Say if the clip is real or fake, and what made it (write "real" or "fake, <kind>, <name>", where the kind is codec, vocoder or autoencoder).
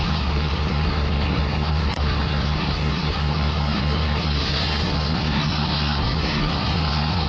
fake, codec, SNAC